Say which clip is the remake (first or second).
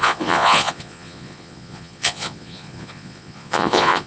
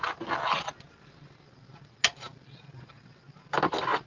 first